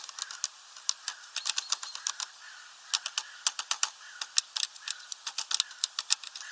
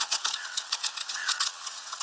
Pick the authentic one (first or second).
first